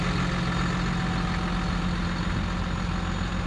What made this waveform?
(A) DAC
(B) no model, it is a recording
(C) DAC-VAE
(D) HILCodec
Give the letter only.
B